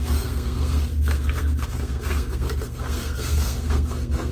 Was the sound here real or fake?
fake